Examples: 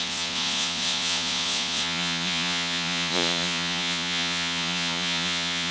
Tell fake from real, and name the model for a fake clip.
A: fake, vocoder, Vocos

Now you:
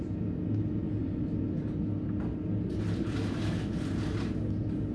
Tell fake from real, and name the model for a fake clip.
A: real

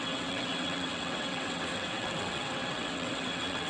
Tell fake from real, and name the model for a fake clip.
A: fake, vocoder, WaveNeXt